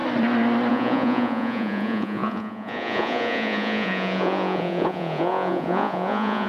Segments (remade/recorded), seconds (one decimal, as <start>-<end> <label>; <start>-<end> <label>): 0.0-0.7 recorded; 0.7-6.5 remade

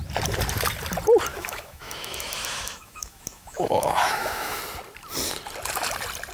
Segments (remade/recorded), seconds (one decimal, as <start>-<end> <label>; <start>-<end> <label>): 0.0-1.3 recorded; 1.3-4.6 remade; 4.6-6.3 recorded

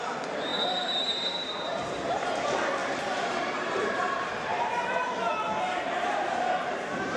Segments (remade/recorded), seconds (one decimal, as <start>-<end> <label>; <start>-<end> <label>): 0.0-5.3 remade; 5.3-5.9 recorded; 5.9-7.2 remade

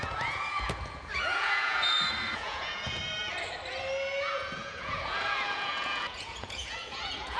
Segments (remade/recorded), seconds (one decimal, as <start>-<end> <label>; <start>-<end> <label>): 0.0-3.0 remade; 3.0-4.2 recorded; 4.2-7.4 remade

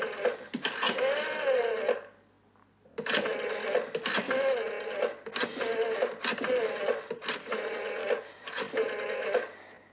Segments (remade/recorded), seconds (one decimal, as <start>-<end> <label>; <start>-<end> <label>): 0.0-9.9 recorded

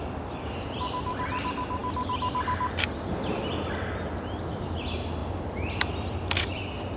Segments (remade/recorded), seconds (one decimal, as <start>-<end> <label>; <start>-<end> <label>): 0.0-5.2 recorded; 5.2-7.0 remade